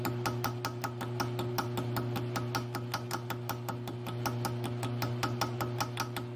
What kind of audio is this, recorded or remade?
recorded